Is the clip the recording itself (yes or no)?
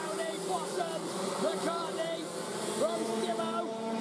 no